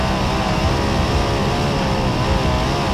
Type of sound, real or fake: real